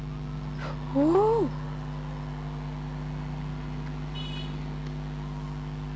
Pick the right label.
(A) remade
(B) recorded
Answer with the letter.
B